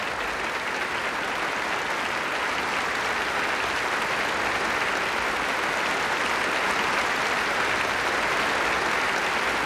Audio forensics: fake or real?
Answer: real